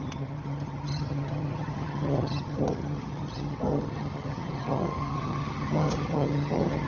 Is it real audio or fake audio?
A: fake